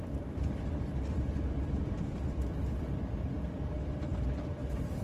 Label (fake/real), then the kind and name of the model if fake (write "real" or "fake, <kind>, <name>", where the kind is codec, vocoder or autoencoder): fake, vocoder, BigVGAN v2